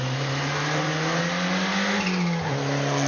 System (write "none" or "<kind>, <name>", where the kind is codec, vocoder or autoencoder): none